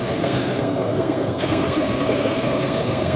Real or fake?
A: fake